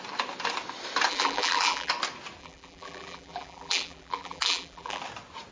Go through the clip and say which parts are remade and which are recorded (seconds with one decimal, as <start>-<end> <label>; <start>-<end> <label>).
0.0-1.1 recorded; 1.1-1.9 remade; 1.9-2.4 recorded; 2.4-5.0 remade; 5.0-5.5 recorded